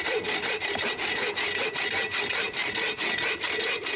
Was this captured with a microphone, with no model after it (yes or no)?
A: yes